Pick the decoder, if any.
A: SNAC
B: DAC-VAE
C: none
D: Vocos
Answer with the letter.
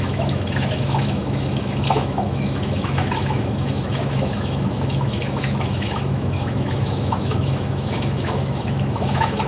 B